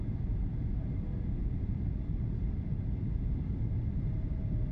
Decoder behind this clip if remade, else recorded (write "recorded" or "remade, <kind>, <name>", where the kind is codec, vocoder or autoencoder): recorded